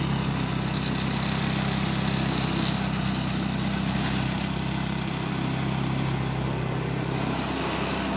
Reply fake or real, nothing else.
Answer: real